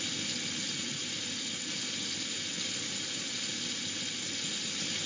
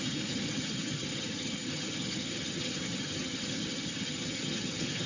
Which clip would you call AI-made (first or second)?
second